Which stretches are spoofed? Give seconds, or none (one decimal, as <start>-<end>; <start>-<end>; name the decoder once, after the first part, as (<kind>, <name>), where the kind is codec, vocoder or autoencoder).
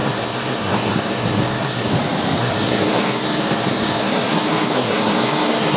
0.0-1.9 (codec, SNAC); 2.4-5.8